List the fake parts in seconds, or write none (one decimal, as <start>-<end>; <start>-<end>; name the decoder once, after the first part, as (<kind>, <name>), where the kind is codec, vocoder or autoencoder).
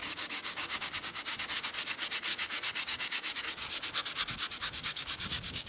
0.0-1.4 (codec, DAC); 2.3-3.4; 4.6-5.7